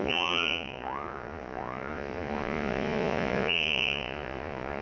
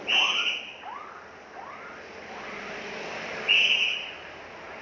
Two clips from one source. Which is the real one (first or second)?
second